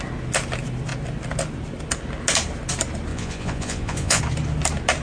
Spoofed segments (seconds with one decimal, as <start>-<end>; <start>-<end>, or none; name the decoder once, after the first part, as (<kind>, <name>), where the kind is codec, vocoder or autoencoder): 3.1-4.2 (vocoder, Vocos)